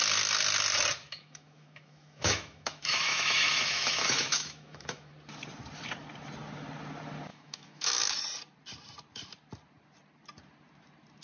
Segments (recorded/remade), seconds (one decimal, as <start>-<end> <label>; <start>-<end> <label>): 0.0-1.0 recorded; 1.0-5.1 remade; 5.1-7.3 recorded; 7.3-8.2 remade; 8.2-11.2 recorded